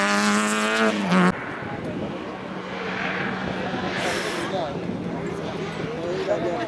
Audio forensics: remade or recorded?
recorded